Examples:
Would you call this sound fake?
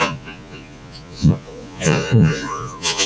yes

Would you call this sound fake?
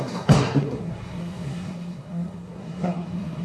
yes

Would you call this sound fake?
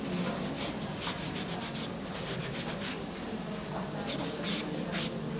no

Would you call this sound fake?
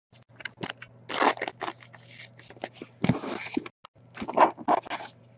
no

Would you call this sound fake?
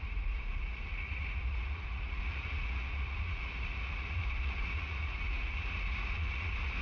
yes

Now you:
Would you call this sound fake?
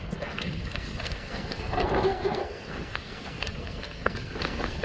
yes